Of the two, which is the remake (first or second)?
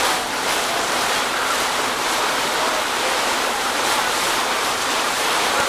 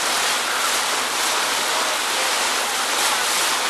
first